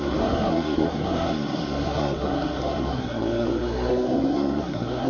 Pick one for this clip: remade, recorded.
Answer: remade